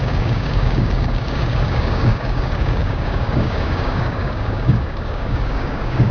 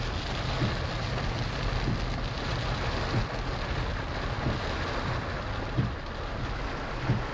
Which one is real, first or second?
second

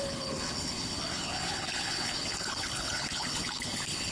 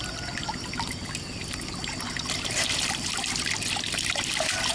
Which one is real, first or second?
second